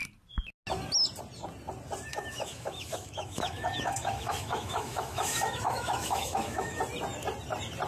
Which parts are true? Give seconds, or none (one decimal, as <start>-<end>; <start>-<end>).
0.0-2.1; 6.8-7.9